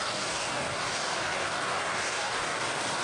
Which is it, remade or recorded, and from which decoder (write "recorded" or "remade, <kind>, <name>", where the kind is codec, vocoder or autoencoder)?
remade, codec, DAC